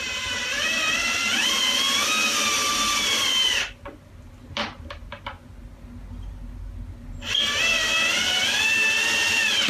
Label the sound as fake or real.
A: real